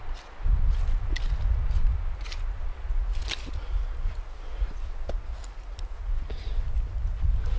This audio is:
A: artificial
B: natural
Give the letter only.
B